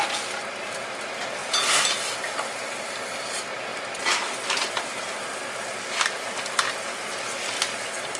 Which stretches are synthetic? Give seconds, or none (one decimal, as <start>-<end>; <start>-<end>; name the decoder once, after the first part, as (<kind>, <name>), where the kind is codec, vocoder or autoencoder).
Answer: 1.4-2.9 (vocoder, BigVGAN v2); 3.7-8.2